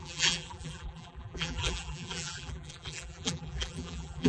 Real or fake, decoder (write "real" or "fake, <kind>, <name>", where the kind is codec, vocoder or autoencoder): fake, vocoder, BigVGAN v2